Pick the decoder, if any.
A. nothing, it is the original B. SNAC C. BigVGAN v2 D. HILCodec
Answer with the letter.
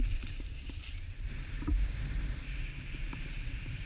C